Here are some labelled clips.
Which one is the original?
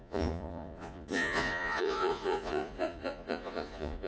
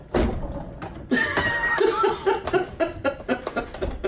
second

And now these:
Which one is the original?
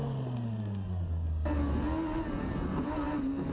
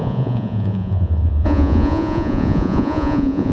first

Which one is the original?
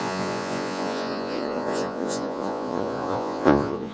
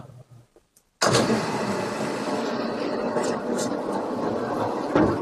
second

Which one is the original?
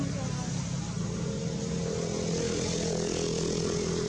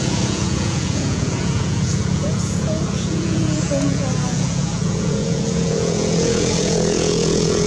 first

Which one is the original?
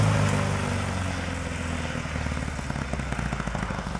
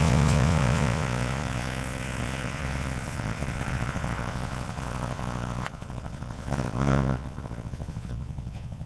first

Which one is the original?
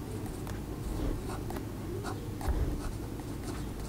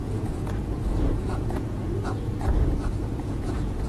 first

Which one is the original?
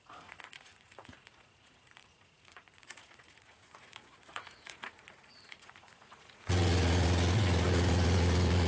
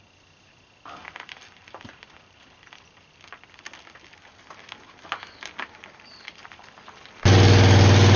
second